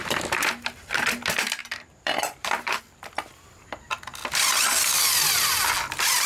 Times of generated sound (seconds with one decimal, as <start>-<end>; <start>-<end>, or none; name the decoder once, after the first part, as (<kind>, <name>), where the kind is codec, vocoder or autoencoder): 1.6-2.8 (vocoder, BigVGAN v2)